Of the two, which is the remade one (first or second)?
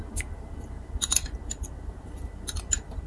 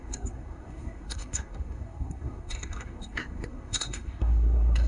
second